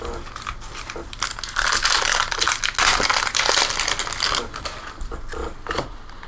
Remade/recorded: recorded